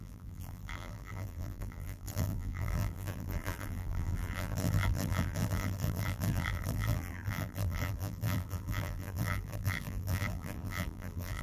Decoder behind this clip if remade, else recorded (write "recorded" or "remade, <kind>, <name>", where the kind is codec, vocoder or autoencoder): remade, vocoder, BigVGAN v2